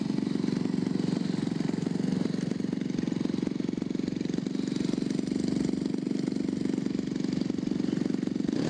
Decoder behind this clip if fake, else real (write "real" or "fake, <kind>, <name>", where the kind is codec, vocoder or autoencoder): real